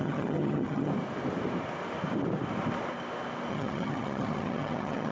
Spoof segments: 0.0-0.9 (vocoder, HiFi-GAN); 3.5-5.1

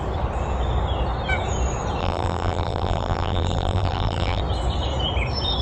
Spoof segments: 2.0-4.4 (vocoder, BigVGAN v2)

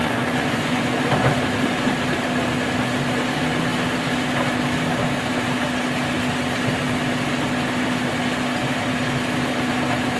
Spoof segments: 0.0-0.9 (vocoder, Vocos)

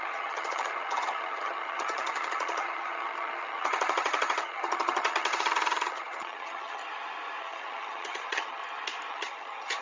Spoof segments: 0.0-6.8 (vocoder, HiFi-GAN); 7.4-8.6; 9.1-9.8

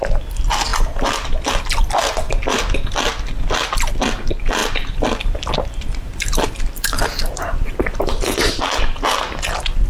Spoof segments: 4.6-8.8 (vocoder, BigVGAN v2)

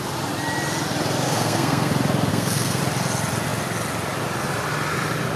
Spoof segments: 1.2-1.9 (codec, SNAC); 2.3-2.8

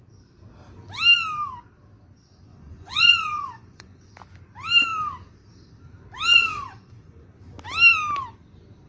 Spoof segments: 2.5-4.0 (vocoder, Vocos); 6.3-7.3